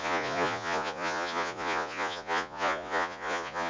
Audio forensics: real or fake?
fake